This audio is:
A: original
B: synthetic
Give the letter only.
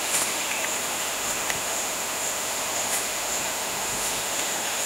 B